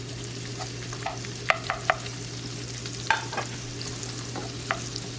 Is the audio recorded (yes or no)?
yes